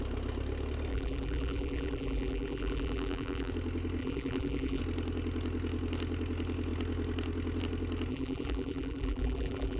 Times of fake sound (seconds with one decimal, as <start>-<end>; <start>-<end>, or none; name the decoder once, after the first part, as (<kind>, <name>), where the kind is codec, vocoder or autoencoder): 0.9-3.5 (vocoder, BigVGAN v2); 4.0-4.8; 8.1-9.8